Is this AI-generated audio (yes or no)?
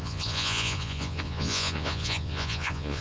yes